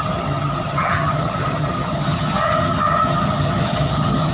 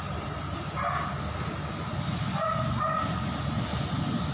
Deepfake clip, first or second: first